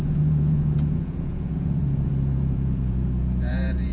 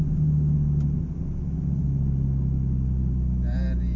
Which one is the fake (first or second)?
first